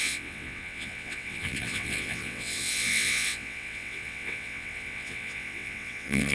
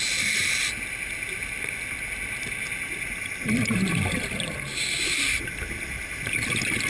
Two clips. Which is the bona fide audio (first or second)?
second